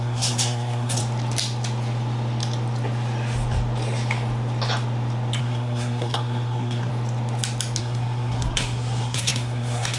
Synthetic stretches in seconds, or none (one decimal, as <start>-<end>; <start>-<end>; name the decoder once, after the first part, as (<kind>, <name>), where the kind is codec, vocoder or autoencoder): 0.0-1.0 (codec, SNAC); 5.4-6.9; 7.8-10.0